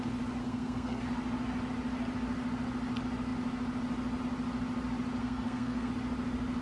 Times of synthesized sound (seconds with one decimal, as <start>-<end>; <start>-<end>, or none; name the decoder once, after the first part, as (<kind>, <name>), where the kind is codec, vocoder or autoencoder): 0.4-1.0 (codec, SNAC); 5.2-5.9